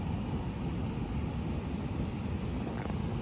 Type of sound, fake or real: real